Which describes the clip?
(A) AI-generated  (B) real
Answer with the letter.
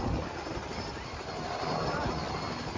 B